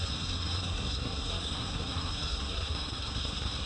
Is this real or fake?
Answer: fake